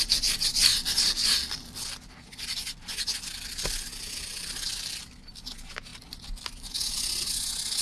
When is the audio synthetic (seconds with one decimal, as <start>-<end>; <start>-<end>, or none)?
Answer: 0.6-5.3